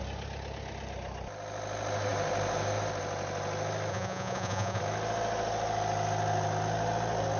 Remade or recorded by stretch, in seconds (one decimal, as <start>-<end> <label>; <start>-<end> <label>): 0.0-3.9 recorded; 3.9-4.8 remade; 4.8-7.4 recorded